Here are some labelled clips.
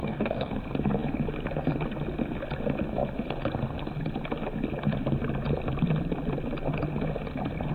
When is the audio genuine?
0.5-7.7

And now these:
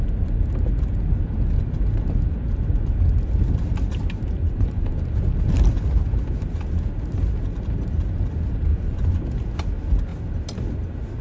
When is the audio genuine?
0.0-4.4; 5.0-8.7; 9.2-11.2

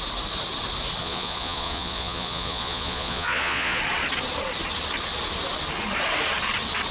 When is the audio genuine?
0.0-1.0; 3.8-6.9

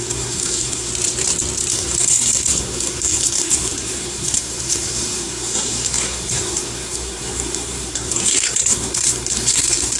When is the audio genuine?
0.9-1.7

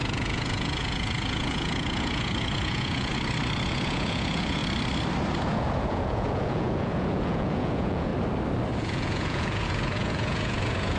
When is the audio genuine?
3.1-3.7; 4.6-5.4; 8.1-8.8

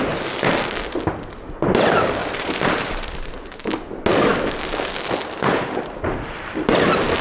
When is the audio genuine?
0.0-2.2; 3.5-7.2

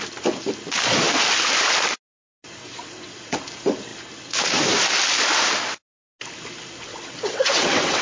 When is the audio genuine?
0.0-2.6; 3.4-6.9